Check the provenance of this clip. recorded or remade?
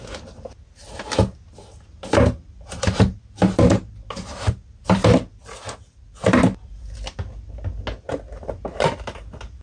recorded